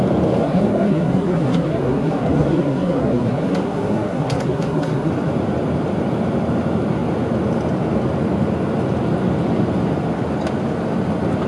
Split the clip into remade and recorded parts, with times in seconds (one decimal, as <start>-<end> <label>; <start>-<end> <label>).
0.0-0.4 recorded; 0.4-5.1 remade; 5.1-11.5 recorded